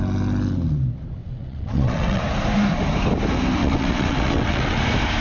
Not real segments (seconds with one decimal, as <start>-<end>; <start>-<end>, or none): 1.2-2.2; 3.6-4.8

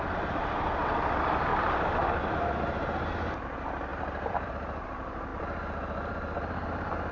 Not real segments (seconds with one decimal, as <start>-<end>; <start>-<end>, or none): 1.5-2.5; 3.9-4.5; 5.3-7.1

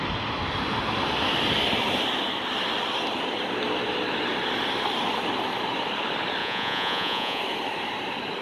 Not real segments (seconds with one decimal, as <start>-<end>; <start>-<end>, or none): 6.4-7.4

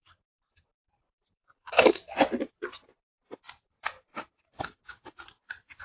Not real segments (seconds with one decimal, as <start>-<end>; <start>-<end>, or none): 0.0-5.8

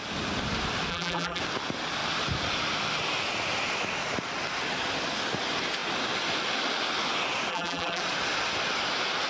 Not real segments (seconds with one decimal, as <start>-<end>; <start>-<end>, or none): 0.9-1.4; 7.5-8.0

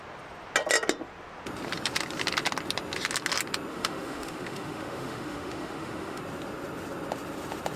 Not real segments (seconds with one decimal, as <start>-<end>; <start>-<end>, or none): 3.7-6.2